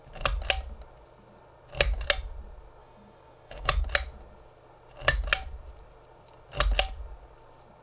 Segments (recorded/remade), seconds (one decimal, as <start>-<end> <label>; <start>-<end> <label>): 0.0-2.8 recorded; 2.8-3.8 remade; 3.8-7.8 recorded